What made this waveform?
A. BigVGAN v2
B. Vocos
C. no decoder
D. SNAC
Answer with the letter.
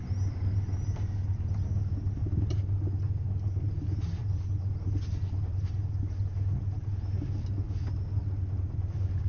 C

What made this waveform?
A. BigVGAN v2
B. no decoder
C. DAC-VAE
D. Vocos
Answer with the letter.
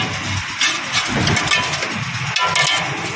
B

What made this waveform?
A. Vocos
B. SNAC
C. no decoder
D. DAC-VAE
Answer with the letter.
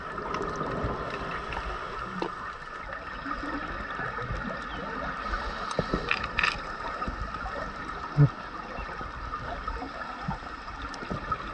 C